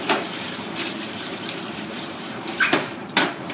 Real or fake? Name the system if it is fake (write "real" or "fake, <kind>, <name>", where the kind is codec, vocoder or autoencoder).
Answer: fake, vocoder, BigVGAN v2